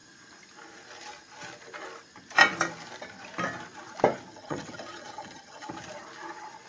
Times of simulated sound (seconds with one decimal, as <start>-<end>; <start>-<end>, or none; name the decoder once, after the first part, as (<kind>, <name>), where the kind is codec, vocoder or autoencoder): 4.3-5.7 (vocoder, HiFi-GAN)